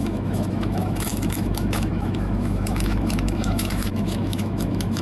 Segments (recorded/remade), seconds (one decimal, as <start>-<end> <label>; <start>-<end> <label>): 0.0-5.0 remade